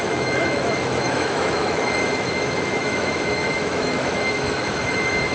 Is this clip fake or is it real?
fake